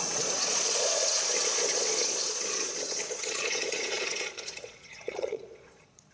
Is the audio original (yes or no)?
no